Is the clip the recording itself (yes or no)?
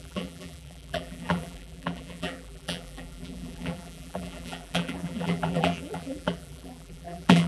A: no